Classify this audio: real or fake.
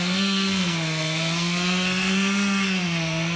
fake